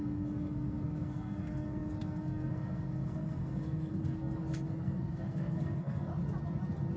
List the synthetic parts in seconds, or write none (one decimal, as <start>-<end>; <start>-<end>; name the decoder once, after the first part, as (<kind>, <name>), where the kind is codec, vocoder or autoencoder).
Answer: 0.0-6.1 (codec, SNAC)